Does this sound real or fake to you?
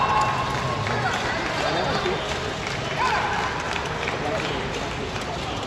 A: real